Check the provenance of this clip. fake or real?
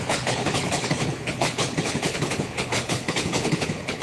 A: fake